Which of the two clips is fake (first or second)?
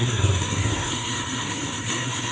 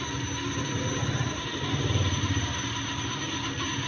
first